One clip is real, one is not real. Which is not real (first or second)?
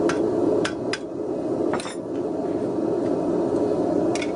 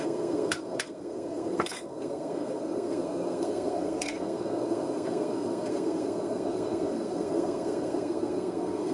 second